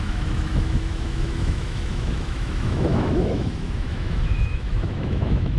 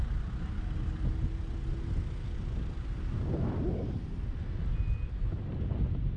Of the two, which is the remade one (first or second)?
first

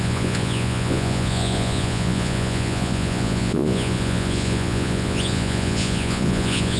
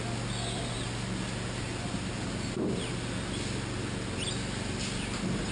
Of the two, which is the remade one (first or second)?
first